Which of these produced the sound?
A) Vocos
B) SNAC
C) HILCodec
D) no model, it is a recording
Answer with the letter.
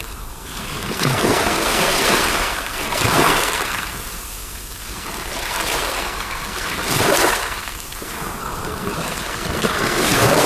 B